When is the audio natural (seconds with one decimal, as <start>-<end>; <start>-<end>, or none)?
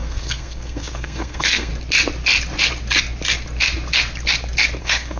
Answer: 1.7-4.8